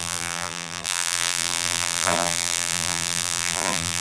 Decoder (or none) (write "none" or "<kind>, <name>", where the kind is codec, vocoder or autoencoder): vocoder, BigVGAN v2